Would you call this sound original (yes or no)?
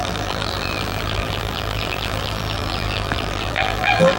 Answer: no